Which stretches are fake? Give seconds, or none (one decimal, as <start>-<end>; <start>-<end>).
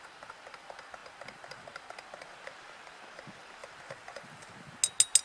1.0-3.0; 3.6-4.8